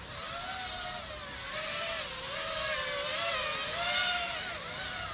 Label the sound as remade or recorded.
recorded